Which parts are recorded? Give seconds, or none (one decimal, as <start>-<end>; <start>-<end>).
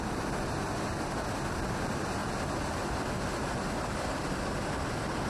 0.0-5.3